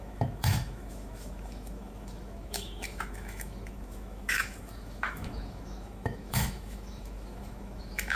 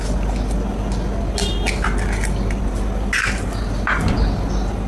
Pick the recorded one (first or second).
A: second